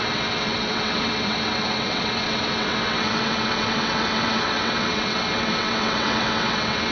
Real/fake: fake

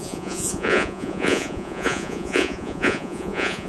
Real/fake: fake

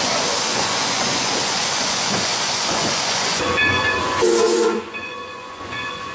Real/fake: fake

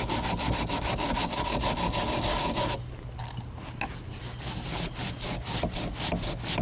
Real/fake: real